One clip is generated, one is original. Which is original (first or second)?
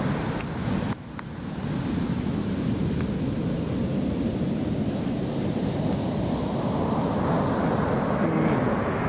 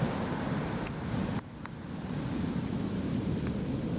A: first